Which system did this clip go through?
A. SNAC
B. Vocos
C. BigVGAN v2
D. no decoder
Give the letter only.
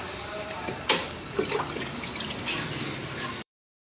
C